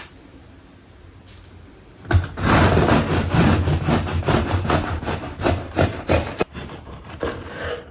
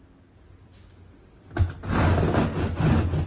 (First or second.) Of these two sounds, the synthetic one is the first